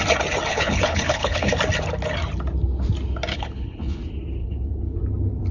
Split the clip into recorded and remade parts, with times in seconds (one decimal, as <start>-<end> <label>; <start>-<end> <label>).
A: 0.0-0.5 recorded; 0.5-1.5 remade; 1.5-3.3 recorded; 3.3-4.0 remade; 4.0-4.4 recorded; 4.4-5.0 remade; 5.0-5.5 recorded